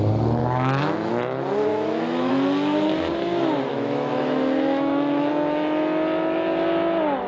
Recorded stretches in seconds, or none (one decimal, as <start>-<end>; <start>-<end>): 0.0-0.4; 1.1-1.7; 2.3-3.7; 5.3-7.3